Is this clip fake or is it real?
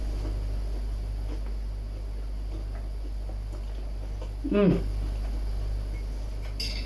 real